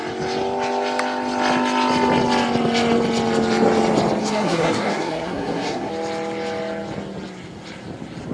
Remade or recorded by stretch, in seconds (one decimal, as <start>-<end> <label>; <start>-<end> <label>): 0.0-4.2 recorded; 4.2-5.9 remade; 5.9-8.3 recorded